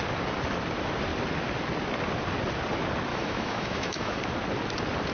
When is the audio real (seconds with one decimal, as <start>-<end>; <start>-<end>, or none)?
0.0-3.1; 4.2-5.1